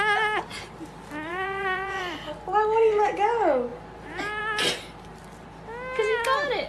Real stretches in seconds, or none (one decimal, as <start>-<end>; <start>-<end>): 0.0-1.3; 2.0-6.7